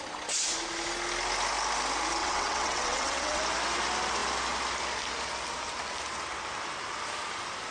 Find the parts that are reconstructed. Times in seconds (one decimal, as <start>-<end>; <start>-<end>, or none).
2.2-3.4

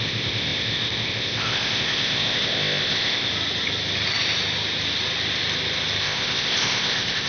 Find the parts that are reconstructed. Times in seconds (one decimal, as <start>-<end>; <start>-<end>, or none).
0.0-3.3; 6.0-7.3

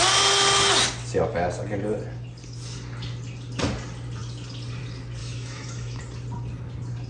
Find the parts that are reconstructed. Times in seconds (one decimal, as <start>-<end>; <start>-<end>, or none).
5.2-6.0

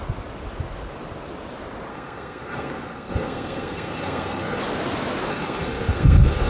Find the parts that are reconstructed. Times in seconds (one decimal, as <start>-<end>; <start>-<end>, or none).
1.9-4.6; 5.3-6.5

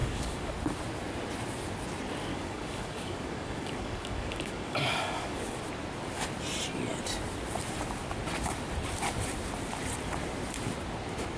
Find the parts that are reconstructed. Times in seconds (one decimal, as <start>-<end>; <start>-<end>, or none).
0.0-0.5; 2.3-5.6

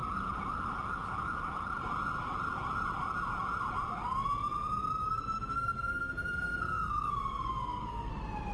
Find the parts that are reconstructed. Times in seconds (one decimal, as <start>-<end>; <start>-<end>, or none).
5.0-8.1

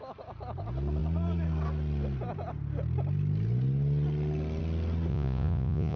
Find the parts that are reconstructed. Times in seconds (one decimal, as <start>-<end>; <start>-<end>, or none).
5.1-6.0